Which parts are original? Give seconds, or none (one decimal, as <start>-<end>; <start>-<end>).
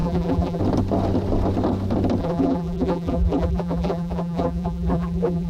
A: 0.6-2.2